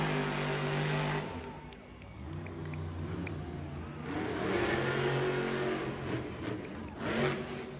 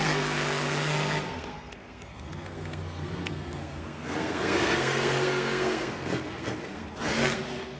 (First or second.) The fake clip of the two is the second